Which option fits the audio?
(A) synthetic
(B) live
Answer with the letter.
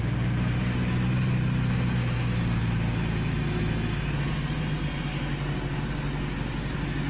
B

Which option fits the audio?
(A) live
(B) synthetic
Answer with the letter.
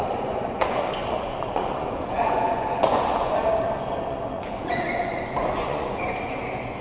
B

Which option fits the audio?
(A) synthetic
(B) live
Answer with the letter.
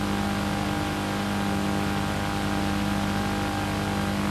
B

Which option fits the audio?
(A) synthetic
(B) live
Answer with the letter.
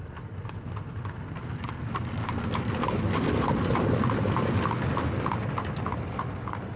B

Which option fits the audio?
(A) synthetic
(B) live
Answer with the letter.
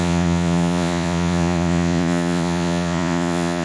A